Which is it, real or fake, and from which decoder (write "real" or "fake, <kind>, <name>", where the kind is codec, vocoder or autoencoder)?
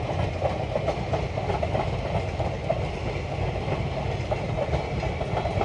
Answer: real